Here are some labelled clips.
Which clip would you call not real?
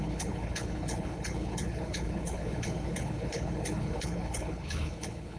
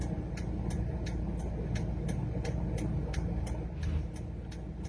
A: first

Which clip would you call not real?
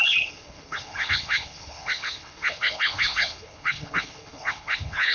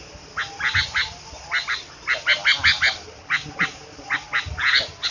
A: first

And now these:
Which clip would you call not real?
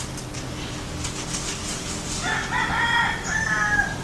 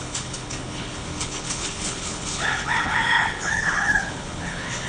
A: second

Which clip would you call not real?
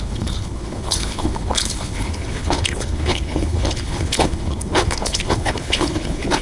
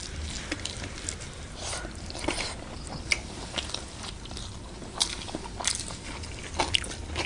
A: first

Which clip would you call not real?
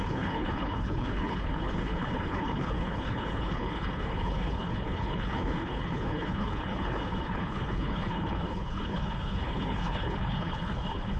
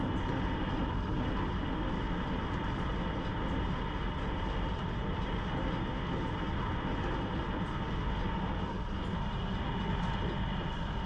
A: first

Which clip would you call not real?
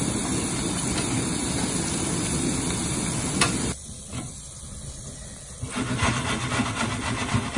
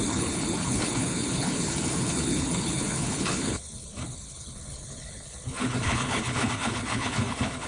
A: second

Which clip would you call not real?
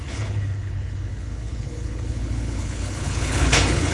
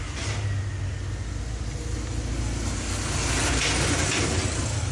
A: first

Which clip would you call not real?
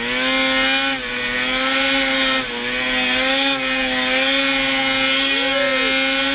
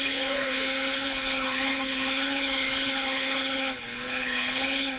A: second